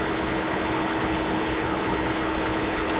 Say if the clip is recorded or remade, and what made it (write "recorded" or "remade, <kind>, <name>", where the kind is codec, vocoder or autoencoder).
remade, codec, HILCodec